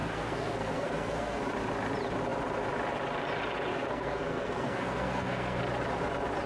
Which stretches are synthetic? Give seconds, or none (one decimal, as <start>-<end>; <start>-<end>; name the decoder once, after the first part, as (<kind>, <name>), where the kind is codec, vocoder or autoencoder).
0.0-1.4 (codec, SNAC); 3.7-5.6